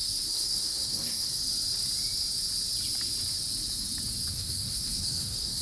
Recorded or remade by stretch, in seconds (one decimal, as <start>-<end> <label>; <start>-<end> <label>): 0.0-1.3 remade; 1.3-4.3 recorded; 4.3-5.6 remade

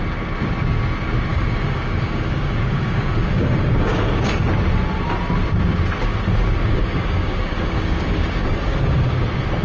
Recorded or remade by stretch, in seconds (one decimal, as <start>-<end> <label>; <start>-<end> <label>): 0.0-1.3 recorded; 1.3-4.5 remade; 4.5-6.6 recorded; 6.6-9.2 remade; 9.2-9.6 recorded

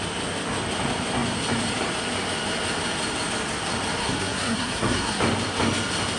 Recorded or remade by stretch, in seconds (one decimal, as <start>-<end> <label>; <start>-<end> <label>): 0.0-4.0 recorded; 4.0-5.2 remade; 5.2-6.2 recorded